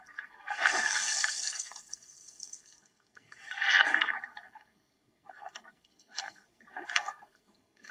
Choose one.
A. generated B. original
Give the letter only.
A